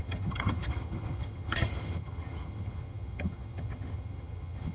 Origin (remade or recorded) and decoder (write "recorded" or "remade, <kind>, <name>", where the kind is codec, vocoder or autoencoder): remade, vocoder, HiFi-GAN